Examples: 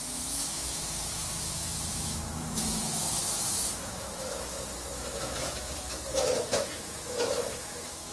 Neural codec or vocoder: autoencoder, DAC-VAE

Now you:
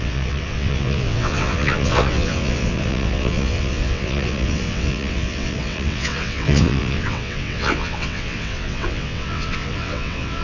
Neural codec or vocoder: vocoder, WaveNeXt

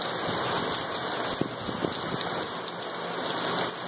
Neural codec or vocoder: none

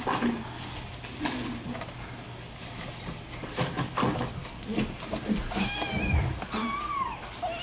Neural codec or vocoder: none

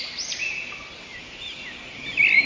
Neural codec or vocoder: none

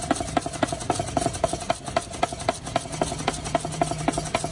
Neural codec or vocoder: none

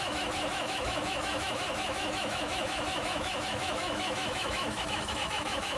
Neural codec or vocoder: autoencoder, DAC-VAE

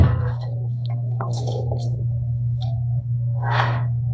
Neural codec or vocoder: codec, SNAC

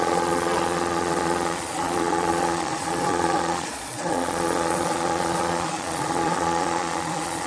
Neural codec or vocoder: vocoder, Vocos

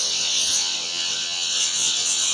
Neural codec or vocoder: vocoder, WaveNeXt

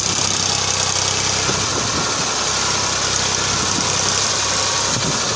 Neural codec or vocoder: none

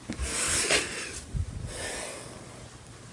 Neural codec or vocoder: none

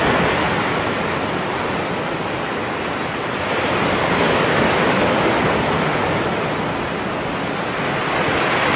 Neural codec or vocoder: none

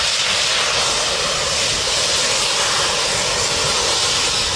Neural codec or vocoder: none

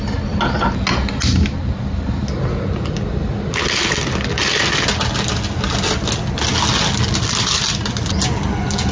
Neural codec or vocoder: none